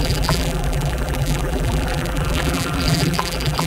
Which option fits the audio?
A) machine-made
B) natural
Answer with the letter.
A